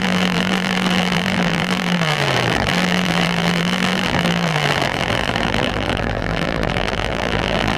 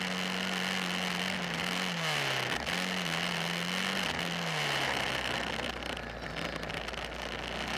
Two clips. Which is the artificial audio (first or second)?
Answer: first